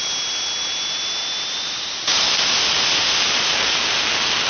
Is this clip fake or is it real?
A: real